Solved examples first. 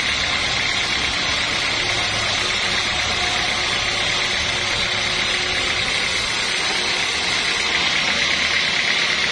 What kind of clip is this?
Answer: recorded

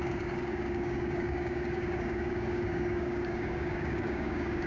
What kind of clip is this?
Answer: remade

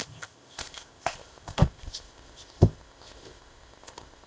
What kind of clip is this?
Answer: remade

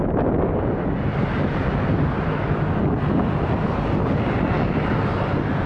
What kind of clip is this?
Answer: recorded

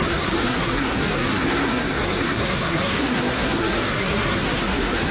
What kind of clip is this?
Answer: remade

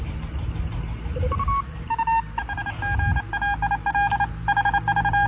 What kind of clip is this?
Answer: recorded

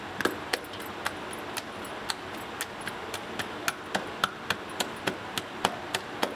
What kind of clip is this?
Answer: recorded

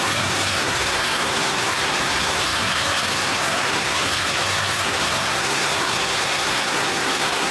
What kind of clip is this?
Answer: remade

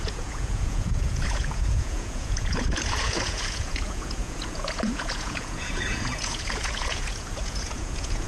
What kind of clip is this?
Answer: remade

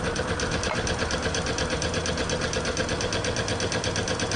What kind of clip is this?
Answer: recorded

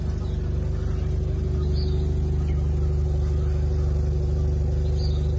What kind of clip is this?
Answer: recorded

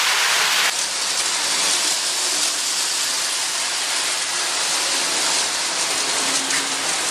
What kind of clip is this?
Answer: recorded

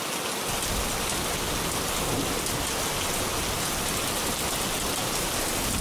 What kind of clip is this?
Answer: recorded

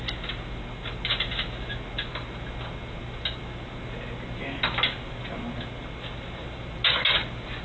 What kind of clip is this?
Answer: recorded